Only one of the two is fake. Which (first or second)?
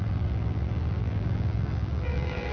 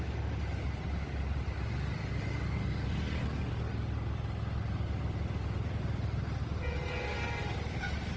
first